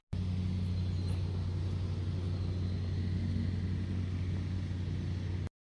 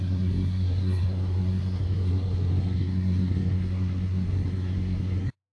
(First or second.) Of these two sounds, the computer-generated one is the second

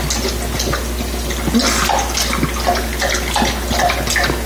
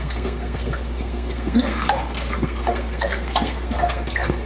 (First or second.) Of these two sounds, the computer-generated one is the second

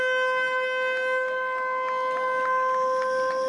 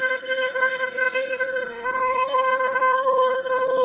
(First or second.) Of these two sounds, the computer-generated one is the second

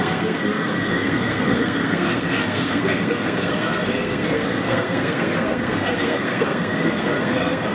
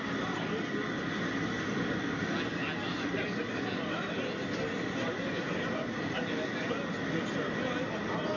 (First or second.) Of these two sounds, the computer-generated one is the first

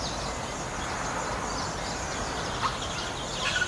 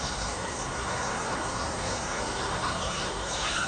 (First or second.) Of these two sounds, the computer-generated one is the second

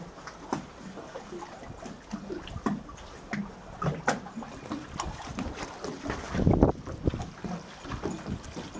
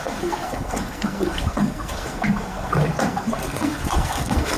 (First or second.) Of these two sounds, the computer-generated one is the second